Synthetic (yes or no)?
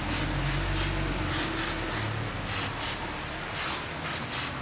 no